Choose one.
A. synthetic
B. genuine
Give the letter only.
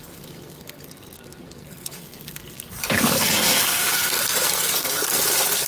A